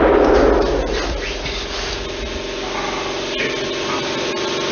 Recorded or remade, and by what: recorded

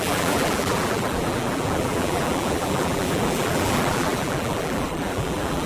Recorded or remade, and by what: remade, vocoder, BigVGAN v2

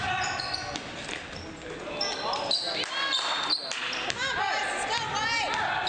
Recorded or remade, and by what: recorded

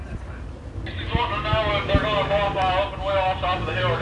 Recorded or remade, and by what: recorded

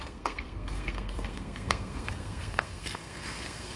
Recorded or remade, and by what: remade, codec, SNAC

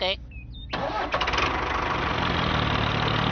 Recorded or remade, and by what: recorded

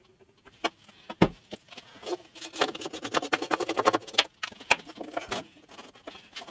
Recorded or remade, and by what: recorded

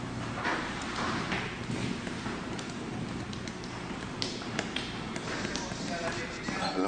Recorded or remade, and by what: remade, vocoder, BigVGAN v2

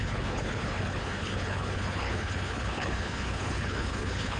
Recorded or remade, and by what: remade, codec, HILCodec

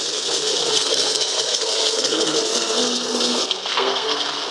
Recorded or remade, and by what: remade, codec, SNAC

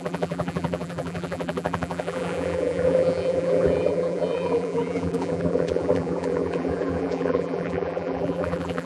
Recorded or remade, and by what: remade, vocoder, BigVGAN v2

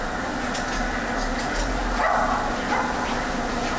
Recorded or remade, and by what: recorded